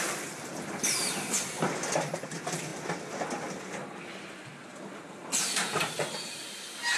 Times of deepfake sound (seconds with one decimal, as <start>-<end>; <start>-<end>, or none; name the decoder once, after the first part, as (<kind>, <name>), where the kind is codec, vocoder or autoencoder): 0.0-2.7 (vocoder, BigVGAN v2); 4.1-4.5; 5.1-7.0